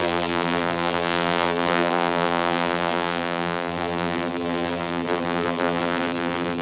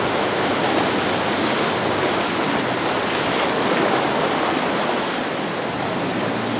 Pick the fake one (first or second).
first